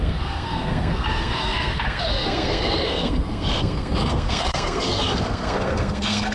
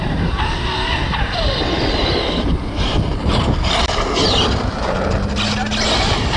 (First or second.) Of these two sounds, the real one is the second